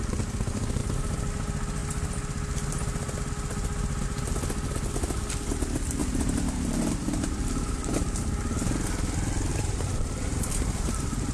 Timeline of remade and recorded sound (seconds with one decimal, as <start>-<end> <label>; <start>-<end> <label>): 0.0-0.8 recorded; 0.8-1.3 remade; 1.3-6.0 recorded; 6.0-7.9 remade; 7.9-9.5 recorded; 9.5-11.3 remade